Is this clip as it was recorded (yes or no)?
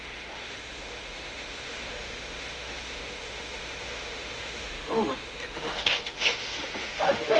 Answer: no